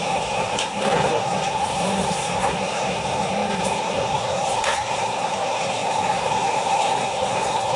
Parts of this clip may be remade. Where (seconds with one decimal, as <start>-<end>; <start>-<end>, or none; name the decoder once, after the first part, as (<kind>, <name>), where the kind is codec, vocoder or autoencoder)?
0.0-7.8 (codec, SNAC)